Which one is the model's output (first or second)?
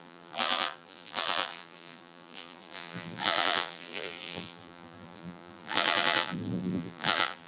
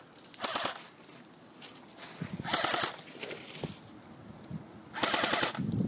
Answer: first